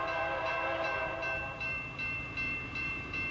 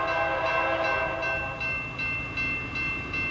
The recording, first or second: second